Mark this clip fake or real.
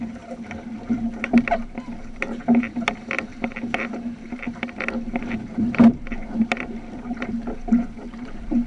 fake